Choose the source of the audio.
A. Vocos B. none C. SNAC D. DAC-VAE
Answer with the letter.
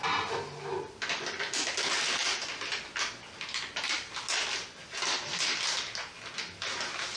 B